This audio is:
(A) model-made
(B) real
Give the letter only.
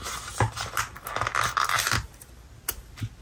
B